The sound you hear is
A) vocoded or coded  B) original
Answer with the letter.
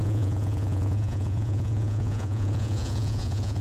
A